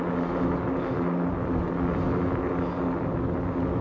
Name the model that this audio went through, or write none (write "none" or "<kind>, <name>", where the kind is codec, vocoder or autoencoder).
none